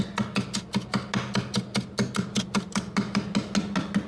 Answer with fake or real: real